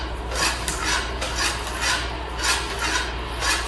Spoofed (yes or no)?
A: no